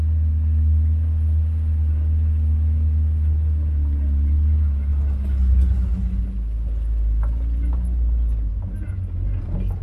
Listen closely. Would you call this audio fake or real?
real